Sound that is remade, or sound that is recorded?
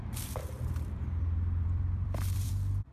remade